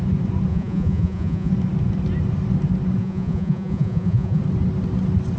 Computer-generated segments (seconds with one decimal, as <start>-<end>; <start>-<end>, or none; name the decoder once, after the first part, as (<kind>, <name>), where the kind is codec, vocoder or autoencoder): 0.5-1.5 (vocoder, Vocos); 3.0-4.4